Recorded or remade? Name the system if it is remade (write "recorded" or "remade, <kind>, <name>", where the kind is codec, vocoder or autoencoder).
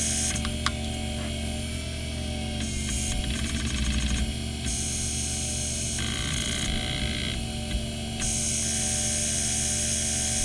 recorded